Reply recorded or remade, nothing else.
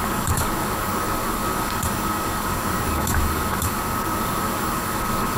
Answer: remade